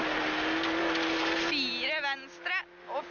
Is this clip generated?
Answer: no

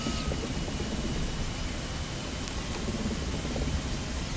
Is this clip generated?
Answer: no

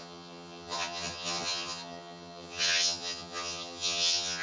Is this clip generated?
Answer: yes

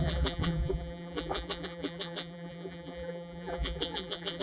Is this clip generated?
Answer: yes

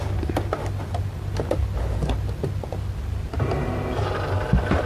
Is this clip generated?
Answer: no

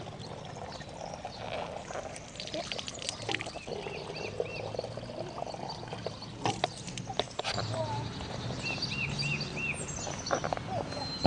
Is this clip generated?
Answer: no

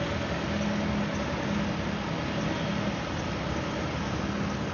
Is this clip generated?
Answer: no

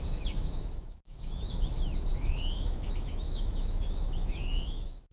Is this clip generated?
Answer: yes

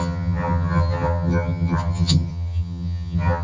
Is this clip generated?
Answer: yes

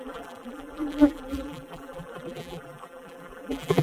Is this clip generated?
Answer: yes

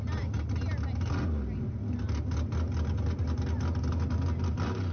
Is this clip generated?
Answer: no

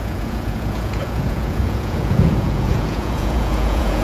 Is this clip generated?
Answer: yes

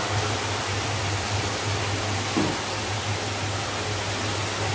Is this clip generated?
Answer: no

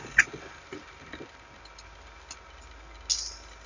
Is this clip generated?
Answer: no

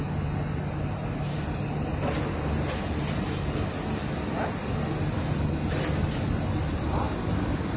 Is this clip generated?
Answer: no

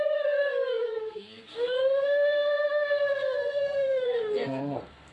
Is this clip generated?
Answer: yes